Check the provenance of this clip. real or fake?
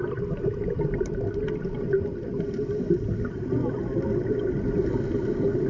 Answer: real